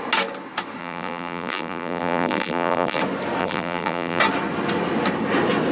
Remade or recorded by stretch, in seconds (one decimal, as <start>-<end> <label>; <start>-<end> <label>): 0.0-0.8 recorded; 0.8-3.0 remade; 3.0-3.4 recorded; 3.4-4.2 remade; 4.2-5.7 recorded